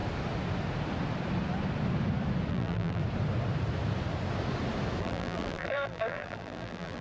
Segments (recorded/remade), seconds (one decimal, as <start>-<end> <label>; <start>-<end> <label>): 0.0-2.5 recorded; 2.5-3.0 remade; 3.0-5.0 recorded; 5.0-7.0 remade